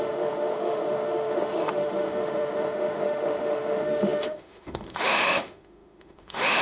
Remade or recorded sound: remade